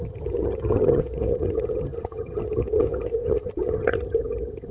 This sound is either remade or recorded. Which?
remade